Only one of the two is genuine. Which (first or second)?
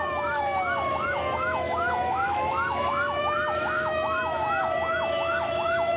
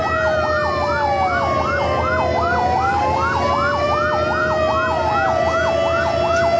second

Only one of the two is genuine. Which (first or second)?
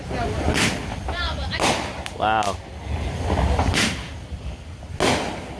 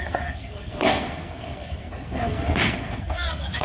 first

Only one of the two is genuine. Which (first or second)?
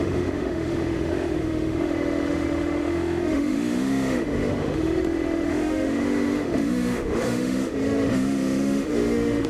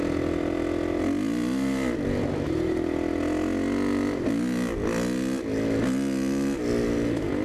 second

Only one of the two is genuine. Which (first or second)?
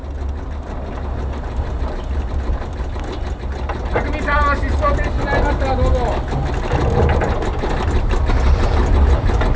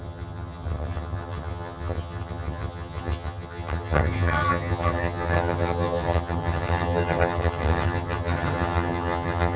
first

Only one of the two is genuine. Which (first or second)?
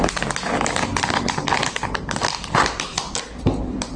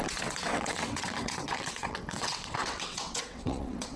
first